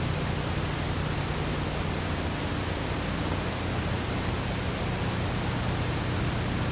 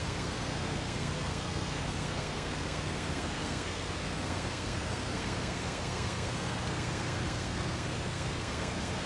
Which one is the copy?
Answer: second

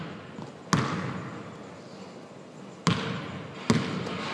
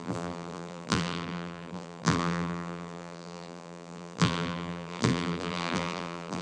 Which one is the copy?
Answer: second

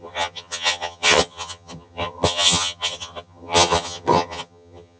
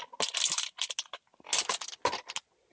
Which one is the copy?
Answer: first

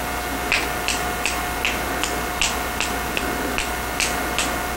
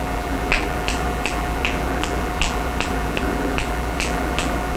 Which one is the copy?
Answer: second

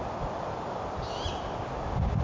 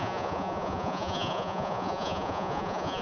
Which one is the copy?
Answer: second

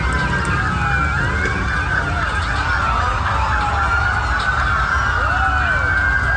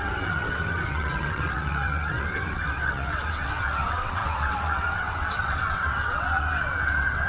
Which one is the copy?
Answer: second